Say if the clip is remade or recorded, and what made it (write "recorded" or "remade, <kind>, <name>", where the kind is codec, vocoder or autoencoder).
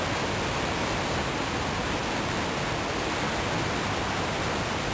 recorded